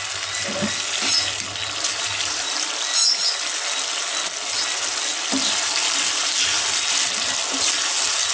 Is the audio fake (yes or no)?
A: no